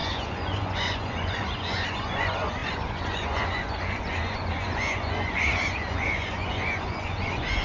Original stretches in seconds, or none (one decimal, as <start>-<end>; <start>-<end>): none